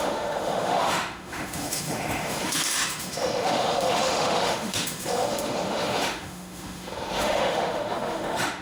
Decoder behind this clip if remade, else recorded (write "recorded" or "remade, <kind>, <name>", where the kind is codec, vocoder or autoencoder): remade, autoencoder, DAC-VAE